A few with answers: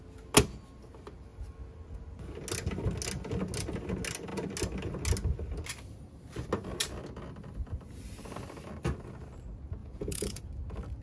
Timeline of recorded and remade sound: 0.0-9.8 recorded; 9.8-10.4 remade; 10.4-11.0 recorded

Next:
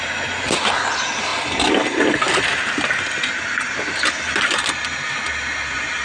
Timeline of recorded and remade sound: 0.0-6.0 recorded

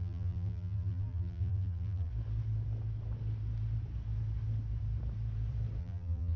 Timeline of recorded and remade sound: 0.0-2.1 remade; 2.1-5.8 recorded; 5.8-6.4 remade

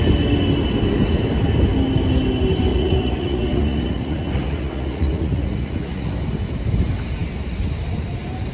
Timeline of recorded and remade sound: 0.0-2.7 recorded; 2.7-6.1 remade; 6.1-8.5 recorded

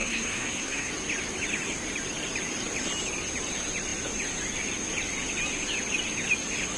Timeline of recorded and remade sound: 0.0-0.9 remade; 0.9-6.8 recorded

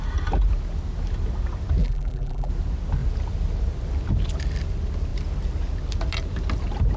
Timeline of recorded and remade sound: 0.0-1.8 recorded; 1.8-2.5 remade; 2.5-7.0 recorded

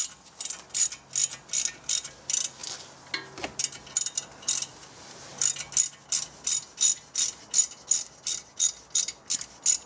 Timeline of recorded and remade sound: 0.0-9.9 recorded

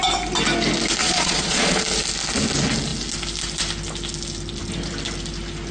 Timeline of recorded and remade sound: 0.0-1.0 recorded; 1.0-1.8 remade; 1.8-5.7 recorded